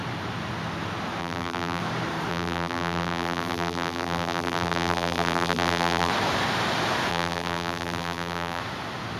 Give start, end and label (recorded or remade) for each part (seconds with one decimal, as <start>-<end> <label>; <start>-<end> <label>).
0.0-1.2 recorded; 1.2-1.8 remade; 1.8-2.3 recorded; 2.3-6.1 remade; 6.1-7.1 recorded; 7.1-8.6 remade; 8.6-9.2 recorded